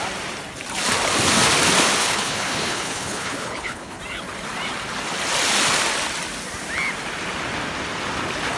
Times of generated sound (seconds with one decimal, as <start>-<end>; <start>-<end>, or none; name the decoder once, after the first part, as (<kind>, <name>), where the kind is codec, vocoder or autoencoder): 2.0-4.0 (codec, HILCodec)